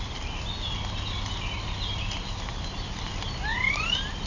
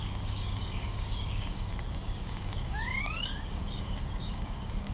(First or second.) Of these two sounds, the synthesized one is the second